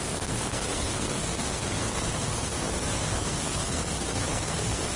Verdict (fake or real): fake